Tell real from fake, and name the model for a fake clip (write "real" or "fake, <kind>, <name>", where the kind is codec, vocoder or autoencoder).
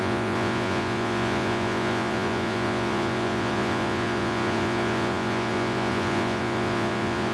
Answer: fake, vocoder, Vocos